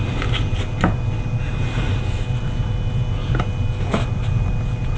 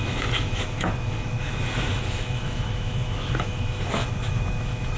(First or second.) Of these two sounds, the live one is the first